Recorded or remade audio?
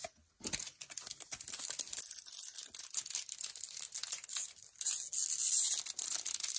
recorded